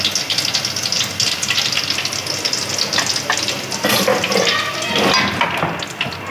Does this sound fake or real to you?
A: real